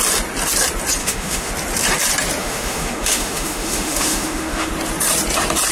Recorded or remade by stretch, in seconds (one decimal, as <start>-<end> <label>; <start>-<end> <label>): 0.0-1.0 recorded; 1.0-1.5 remade; 1.5-2.4 recorded; 2.4-4.7 remade; 4.7-5.7 recorded